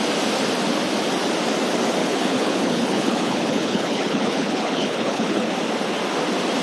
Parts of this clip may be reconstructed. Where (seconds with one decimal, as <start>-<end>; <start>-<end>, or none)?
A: 2.0-5.5